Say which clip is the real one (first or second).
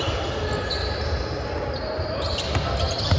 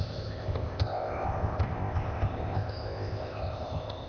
first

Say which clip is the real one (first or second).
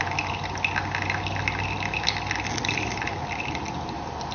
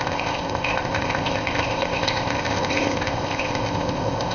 first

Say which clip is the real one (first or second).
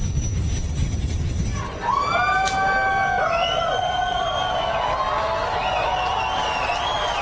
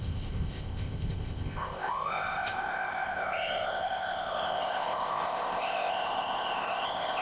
first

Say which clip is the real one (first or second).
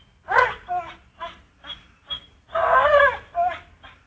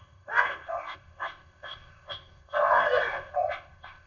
first